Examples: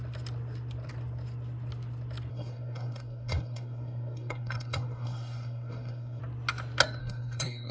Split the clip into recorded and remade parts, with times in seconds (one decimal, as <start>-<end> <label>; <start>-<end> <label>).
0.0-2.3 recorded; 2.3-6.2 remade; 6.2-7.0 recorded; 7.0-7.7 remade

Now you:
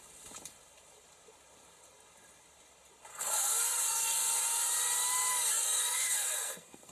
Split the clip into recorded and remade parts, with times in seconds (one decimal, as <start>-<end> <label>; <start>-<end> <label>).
0.0-3.1 recorded; 3.1-4.3 remade; 4.3-5.3 recorded; 5.3-6.9 remade

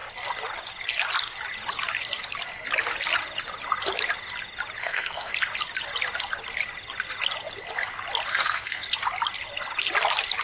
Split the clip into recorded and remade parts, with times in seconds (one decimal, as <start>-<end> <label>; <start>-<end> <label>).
0.0-4.8 recorded; 4.8-5.3 remade; 5.3-8.3 recorded; 8.3-8.8 remade; 8.8-10.4 recorded

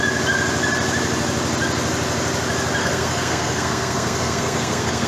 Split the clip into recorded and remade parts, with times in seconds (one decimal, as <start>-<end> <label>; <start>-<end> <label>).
0.0-2.8 recorded; 2.8-5.1 remade

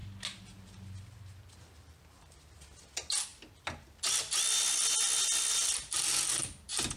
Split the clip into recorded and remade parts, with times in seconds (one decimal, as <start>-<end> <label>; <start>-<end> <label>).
0.0-7.0 recorded

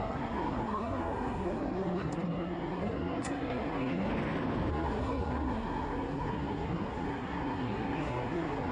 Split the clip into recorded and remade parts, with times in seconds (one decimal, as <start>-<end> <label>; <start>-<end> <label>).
0.0-4.1 remade; 4.1-4.7 recorded; 4.7-8.7 remade